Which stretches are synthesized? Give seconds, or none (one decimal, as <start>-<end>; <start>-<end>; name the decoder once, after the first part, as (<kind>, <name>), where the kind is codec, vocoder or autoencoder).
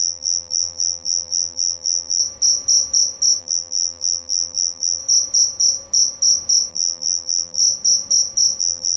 0.0-2.2 (vocoder, BigVGAN v2); 3.4-5.0; 6.7-7.6; 8.6-9.0